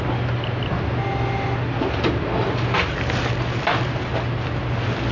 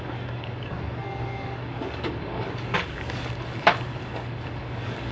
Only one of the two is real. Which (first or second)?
first